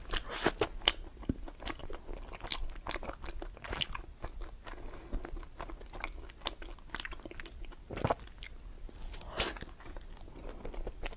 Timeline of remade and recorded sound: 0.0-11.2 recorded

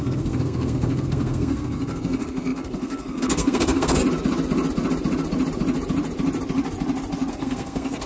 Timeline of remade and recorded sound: 0.0-4.0 remade; 4.0-7.3 recorded; 7.3-8.1 remade

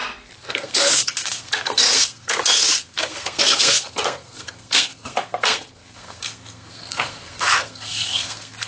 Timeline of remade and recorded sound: 0.0-0.5 recorded; 0.5-8.7 remade

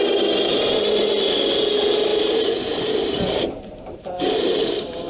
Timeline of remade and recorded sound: 0.0-2.1 recorded; 2.1-5.1 remade

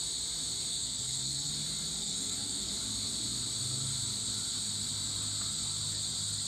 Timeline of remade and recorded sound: 0.0-0.7 recorded; 0.7-1.5 remade; 1.5-2.0 recorded; 2.0-2.7 remade; 2.7-6.5 recorded

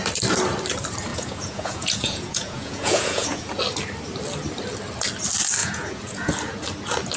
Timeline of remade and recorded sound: 0.0-1.1 recorded; 1.1-3.5 remade; 3.5-5.6 recorded; 5.6-6.3 remade; 6.3-7.2 recorded

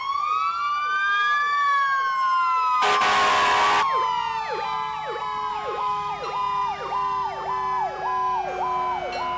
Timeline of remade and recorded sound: 0.0-5.5 recorded; 5.5-6.1 remade; 6.1-9.4 recorded

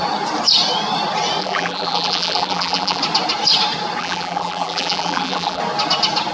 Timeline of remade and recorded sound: 0.0-1.4 recorded; 1.4-3.0 remade; 3.0-4.0 recorded; 4.0-5.6 remade; 5.6-6.3 recorded